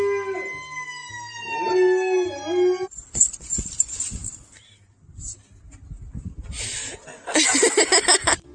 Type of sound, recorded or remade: recorded